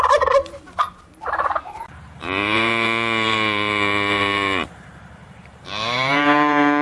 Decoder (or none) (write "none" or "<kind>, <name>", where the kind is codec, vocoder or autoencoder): vocoder, BigVGAN v2